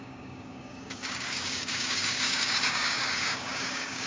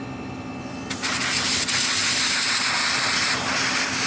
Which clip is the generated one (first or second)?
first